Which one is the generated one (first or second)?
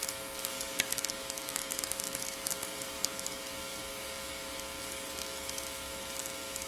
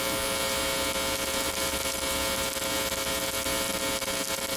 first